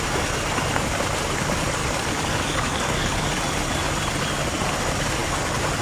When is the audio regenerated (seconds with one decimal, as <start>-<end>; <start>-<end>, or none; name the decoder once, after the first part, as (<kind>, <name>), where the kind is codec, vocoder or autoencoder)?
1.8-3.3 (codec, DAC)